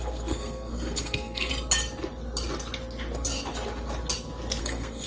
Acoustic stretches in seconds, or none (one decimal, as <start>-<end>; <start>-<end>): 1.5-4.6